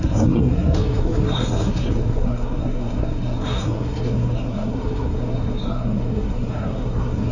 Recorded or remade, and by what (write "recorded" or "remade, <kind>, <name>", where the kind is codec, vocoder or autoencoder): remade, codec, SNAC